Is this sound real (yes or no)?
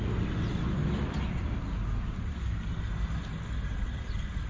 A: yes